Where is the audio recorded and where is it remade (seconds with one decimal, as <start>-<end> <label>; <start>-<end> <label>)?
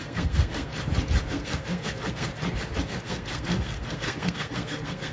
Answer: 0.0-0.7 remade; 0.7-1.3 recorded; 1.3-2.3 remade; 2.3-2.9 recorded; 2.9-5.1 remade